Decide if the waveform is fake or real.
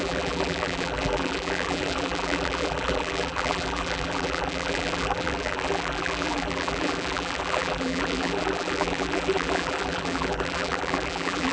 fake